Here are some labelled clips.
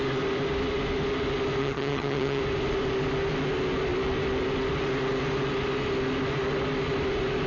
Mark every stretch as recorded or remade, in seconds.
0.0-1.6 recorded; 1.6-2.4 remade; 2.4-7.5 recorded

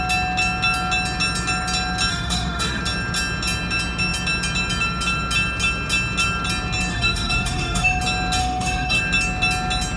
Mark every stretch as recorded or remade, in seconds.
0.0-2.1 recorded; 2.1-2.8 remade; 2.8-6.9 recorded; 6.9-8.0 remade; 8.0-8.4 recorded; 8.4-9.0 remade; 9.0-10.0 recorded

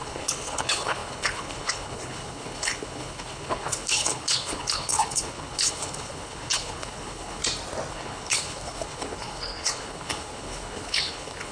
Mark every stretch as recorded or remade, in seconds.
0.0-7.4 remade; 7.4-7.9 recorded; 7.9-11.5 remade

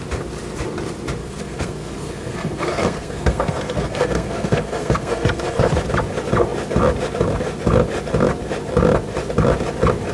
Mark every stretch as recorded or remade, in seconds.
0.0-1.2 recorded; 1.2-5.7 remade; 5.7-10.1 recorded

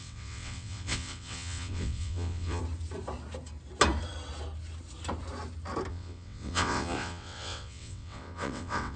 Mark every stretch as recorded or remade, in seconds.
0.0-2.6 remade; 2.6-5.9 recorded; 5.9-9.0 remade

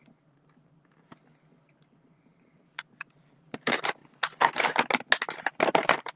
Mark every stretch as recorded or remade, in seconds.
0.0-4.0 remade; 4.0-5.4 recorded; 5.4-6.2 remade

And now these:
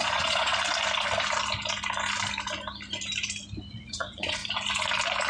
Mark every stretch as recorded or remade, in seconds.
0.0-0.5 remade; 0.5-3.7 recorded; 3.7-4.4 remade; 4.4-5.3 recorded

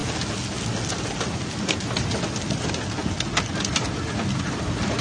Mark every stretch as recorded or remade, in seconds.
0.0-0.9 recorded; 0.9-3.0 remade; 3.0-3.9 recorded; 3.9-5.0 remade